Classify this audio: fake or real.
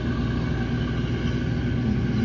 real